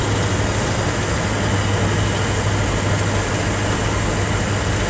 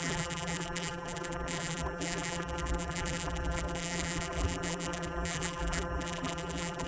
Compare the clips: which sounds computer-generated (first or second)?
second